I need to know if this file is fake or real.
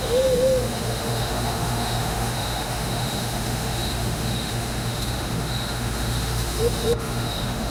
fake